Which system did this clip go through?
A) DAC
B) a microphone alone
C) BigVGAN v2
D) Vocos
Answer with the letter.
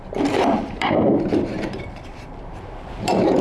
C